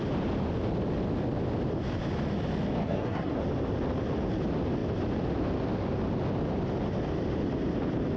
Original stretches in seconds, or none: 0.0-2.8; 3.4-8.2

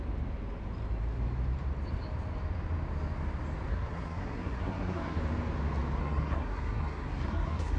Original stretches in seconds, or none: 0.0-3.7; 5.2-6.0

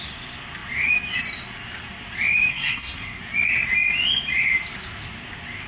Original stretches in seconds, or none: 0.0-2.5; 3.2-5.7

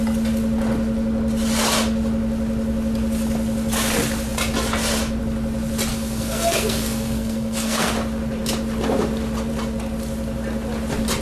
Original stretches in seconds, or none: 0.0-5.9; 7.9-11.2

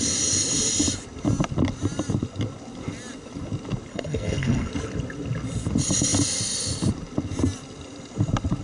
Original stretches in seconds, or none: 0.0-3.9; 4.7-8.6

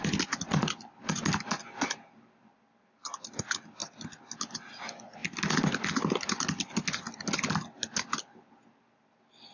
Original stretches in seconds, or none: 0.0-9.5

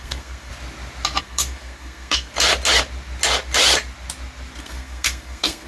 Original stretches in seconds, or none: 0.5-1.2; 2.3-4.6

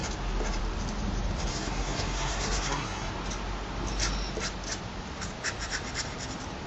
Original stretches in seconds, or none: 0.0-1.5; 3.1-6.7